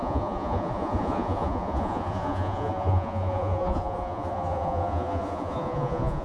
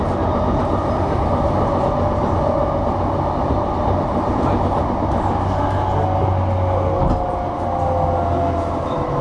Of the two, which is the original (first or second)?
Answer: second